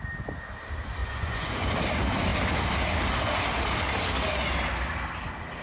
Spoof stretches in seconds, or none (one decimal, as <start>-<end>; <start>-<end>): 1.0-1.7